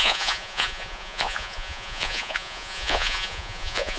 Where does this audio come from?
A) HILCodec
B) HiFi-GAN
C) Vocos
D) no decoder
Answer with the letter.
C